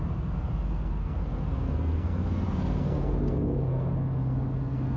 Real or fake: fake